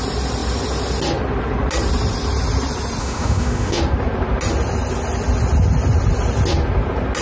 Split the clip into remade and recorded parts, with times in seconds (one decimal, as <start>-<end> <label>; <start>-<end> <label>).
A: 0.0-3.0 recorded; 3.0-3.8 remade; 3.8-7.2 recorded